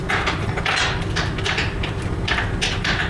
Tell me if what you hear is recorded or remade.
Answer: recorded